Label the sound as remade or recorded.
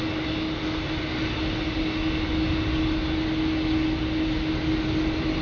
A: recorded